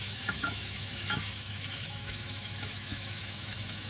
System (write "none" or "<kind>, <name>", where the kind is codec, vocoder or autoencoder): autoencoder, DAC-VAE